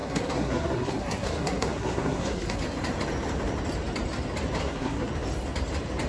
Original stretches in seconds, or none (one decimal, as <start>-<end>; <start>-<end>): 2.6-4.6; 5.1-6.1